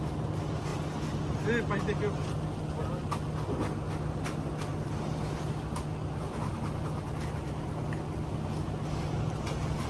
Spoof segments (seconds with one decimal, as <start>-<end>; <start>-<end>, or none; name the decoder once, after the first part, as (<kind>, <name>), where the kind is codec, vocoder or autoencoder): none